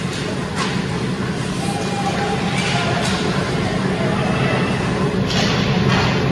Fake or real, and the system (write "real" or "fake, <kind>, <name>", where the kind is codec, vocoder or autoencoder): real